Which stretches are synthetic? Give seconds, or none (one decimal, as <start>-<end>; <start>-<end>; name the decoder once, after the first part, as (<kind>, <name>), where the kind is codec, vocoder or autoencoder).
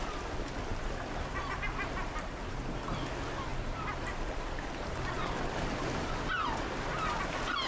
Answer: 0.7-1.7 (vocoder, BigVGAN v2); 3.5-5.8